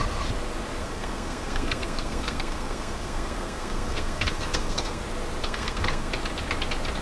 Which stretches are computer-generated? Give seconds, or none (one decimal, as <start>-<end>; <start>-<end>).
0.8-5.0; 5.4-6.1